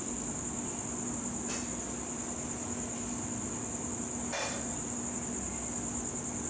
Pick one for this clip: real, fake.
real